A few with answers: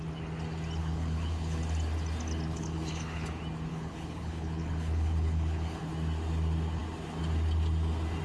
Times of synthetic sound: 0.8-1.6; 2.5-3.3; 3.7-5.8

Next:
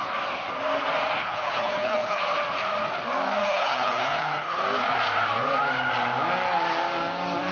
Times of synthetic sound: 1.2-2.2; 3.4-4.6

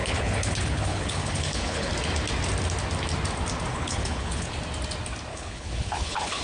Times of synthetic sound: 0.0-1.9; 3.7-4.5; 5.3-6.4

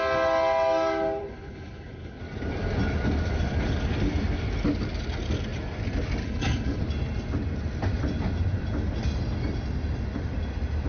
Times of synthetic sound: 1.2-2.2; 6.2-6.8

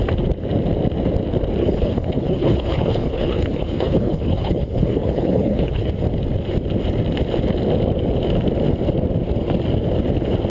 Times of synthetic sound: 1.6-5.9

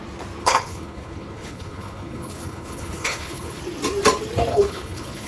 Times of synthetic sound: 0.4-3.6; 4.5-5.3

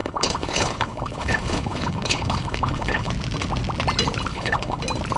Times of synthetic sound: 0.0-3.1; 4.3-4.8